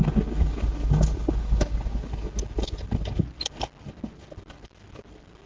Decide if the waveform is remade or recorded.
recorded